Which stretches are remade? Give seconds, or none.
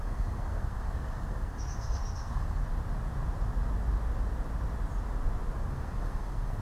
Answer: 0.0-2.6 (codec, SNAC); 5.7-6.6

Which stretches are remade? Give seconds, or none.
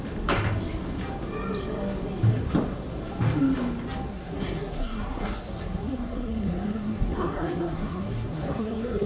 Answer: 4.1-9.1 (codec, SNAC)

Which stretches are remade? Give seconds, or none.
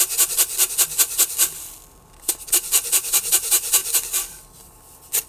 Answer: none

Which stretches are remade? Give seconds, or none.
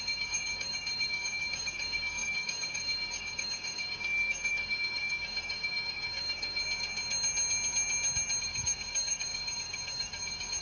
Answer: 0.0-6.6 (codec, DAC); 8.4-10.6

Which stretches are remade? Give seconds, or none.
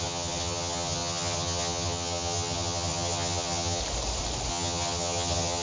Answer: 0.0-3.8 (vocoder, HiFi-GAN); 4.5-5.6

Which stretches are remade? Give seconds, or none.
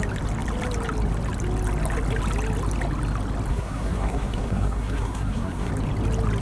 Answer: 3.5-5.7 (codec, SNAC)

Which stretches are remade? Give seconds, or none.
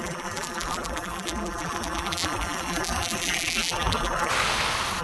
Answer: 0.0-4.3 (vocoder, BigVGAN v2)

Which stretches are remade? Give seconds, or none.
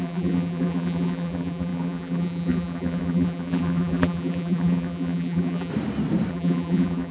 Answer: 0.0-5.7 (vocoder, BigVGAN v2); 6.3-7.1